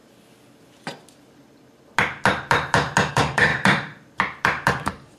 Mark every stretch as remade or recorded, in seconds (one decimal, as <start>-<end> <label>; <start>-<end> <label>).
0.0-3.1 recorded; 3.1-3.5 remade; 3.5-4.7 recorded; 4.7-5.2 remade